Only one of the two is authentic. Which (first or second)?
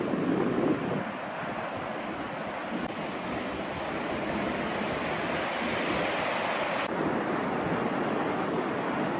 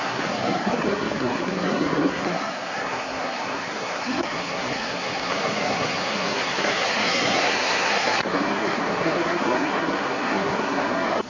first